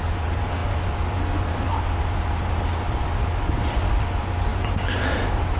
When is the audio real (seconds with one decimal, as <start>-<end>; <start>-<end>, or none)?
0.0-4.5